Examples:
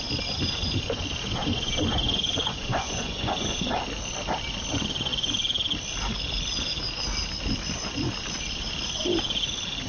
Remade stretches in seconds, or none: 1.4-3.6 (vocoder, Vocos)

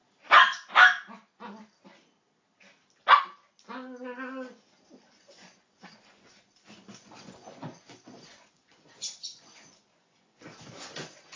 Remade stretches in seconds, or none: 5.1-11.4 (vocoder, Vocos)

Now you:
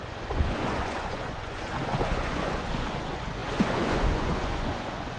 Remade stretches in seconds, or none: 0.0-5.2 (vocoder, Vocos)

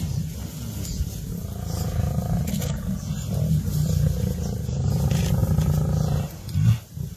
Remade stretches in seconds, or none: none

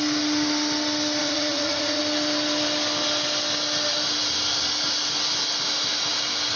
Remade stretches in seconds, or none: 1.2-2.0 (vocoder, Vocos)